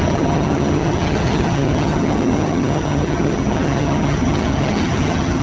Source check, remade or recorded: remade